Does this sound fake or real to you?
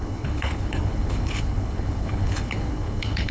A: fake